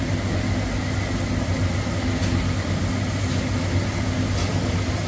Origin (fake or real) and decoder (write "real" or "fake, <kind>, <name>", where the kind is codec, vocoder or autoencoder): real